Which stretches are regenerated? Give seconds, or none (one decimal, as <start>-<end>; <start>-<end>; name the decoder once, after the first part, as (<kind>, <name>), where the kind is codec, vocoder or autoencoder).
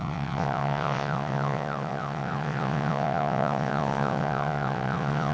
0.0-5.3 (vocoder, WaveNeXt)